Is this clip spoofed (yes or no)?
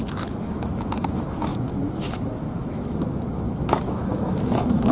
yes